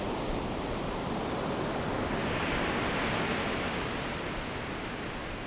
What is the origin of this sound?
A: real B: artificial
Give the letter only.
A